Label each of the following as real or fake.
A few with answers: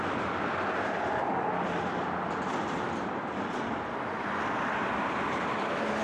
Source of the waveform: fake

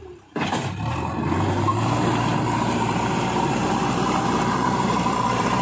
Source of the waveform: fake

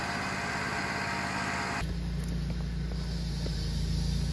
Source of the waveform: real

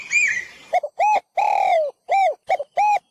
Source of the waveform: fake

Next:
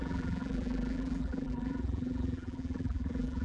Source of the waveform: fake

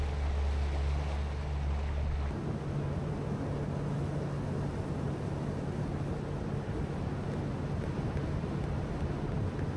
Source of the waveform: real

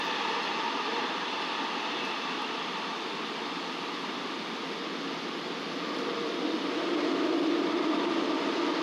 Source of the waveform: fake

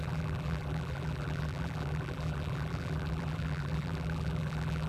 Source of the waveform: fake